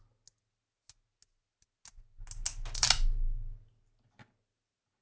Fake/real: real